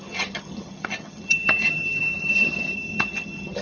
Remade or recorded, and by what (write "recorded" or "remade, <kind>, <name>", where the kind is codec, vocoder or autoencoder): remade, vocoder, HiFi-GAN